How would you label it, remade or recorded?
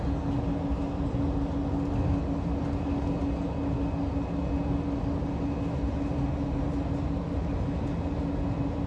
recorded